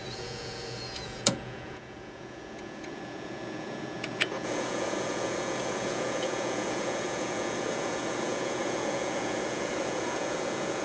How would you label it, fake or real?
fake